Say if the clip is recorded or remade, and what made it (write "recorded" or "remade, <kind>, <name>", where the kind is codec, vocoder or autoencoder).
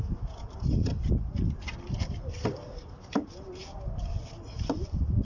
recorded